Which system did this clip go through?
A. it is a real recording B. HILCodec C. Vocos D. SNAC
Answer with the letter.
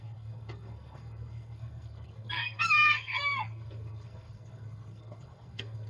D